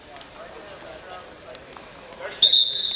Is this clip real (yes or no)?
yes